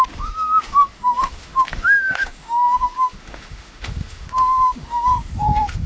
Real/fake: fake